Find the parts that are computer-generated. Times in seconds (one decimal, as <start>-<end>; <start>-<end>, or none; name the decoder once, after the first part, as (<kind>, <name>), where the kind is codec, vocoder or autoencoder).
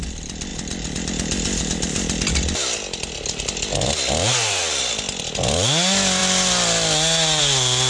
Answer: none